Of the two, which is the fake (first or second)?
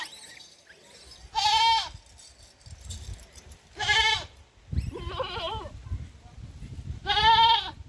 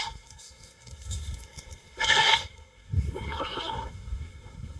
second